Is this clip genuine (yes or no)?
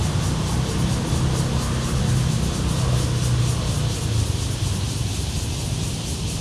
yes